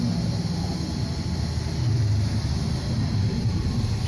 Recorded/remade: recorded